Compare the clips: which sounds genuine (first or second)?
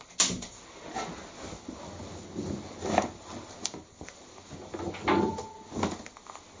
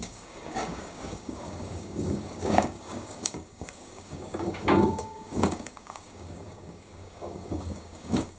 first